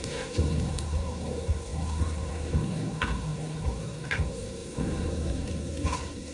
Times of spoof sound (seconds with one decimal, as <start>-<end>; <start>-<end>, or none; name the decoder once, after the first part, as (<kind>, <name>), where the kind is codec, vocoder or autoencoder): 0.0-6.3 (codec, SNAC)